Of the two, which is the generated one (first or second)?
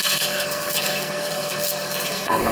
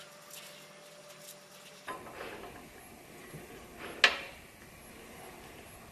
first